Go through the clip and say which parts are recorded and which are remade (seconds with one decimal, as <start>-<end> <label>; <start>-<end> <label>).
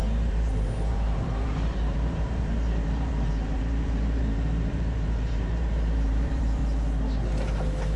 0.0-6.6 remade; 6.6-8.0 recorded